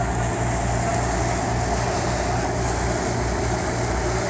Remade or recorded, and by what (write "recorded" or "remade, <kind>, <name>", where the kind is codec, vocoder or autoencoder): recorded